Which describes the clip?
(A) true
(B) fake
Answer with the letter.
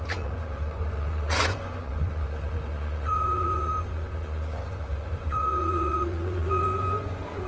B